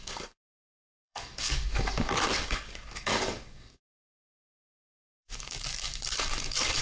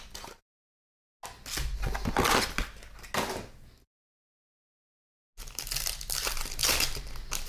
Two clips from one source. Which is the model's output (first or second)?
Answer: first